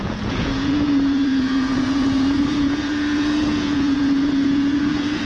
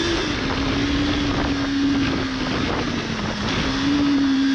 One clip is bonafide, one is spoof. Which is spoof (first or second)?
first